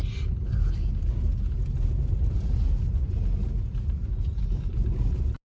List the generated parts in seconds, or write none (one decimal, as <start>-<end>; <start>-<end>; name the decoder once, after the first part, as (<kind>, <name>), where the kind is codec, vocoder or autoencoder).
none